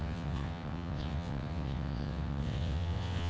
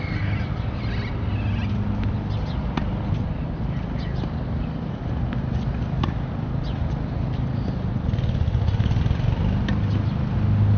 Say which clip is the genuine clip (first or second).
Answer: second